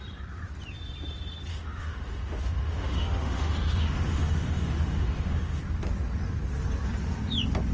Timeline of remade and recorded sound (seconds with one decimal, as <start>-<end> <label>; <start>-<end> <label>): 0.0-1.5 recorded; 1.5-5.6 remade; 5.6-7.7 recorded